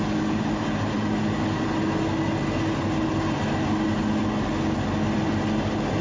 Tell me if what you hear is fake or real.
real